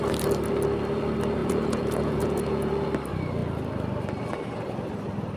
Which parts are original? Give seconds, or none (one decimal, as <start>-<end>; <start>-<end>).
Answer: 0.0-1.4; 2.8-5.4